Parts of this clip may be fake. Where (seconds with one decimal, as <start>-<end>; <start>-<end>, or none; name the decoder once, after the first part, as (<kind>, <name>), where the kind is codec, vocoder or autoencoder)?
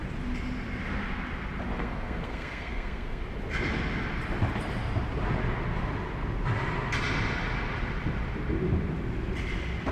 1.8-3.2 (codec, SNAC)